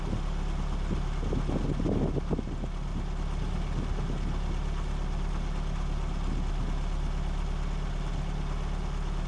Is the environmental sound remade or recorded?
recorded